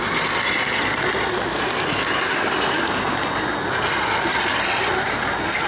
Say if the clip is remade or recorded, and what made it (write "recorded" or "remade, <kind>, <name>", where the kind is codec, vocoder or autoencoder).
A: recorded